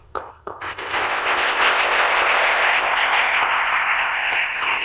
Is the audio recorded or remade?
remade